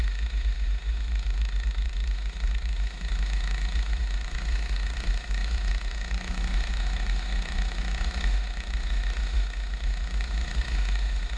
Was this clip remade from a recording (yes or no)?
yes